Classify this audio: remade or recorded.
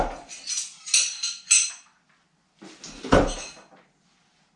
recorded